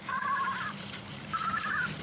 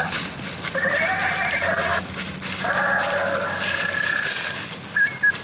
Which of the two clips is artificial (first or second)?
first